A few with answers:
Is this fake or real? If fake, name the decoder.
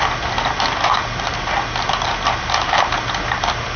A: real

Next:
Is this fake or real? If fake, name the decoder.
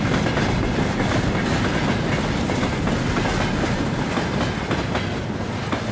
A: real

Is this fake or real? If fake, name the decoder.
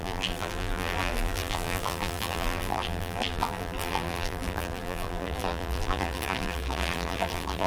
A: fake, vocoder, BigVGAN v2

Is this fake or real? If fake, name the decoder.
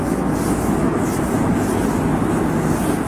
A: real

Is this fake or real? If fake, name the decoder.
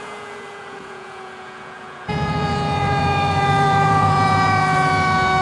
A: fake, vocoder, Vocos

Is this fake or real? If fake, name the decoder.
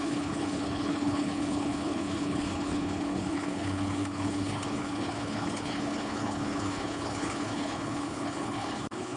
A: fake, codec, HILCodec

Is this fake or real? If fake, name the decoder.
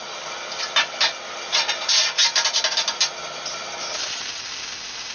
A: real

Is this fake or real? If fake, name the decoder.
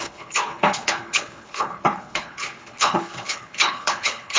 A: fake, codec, HILCodec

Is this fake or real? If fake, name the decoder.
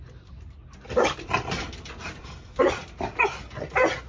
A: real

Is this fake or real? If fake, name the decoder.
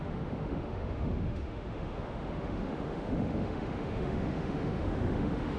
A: fake, autoencoder, DAC-VAE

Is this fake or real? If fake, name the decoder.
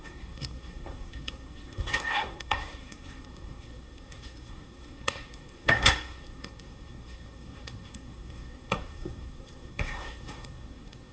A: fake, codec, SNAC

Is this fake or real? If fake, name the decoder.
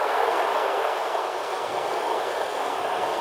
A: fake, codec, SNAC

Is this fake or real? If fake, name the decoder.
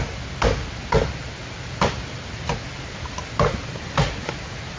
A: real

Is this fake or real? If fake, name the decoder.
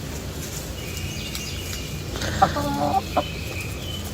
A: real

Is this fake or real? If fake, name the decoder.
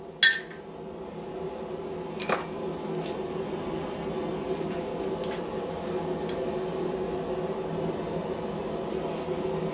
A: real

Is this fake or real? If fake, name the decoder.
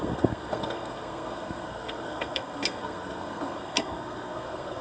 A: fake, codec, SNAC